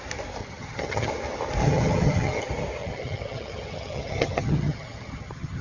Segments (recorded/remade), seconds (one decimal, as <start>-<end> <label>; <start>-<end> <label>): 0.0-0.4 recorded; 0.4-1.1 remade; 1.1-1.6 recorded; 1.6-2.4 remade; 2.4-2.8 recorded; 2.8-5.6 remade